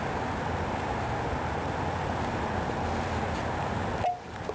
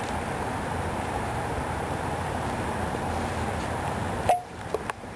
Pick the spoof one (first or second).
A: second